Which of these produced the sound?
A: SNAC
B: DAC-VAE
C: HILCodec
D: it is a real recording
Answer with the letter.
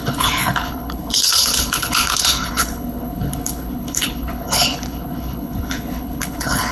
C